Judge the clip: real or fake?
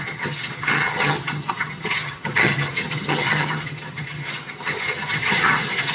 fake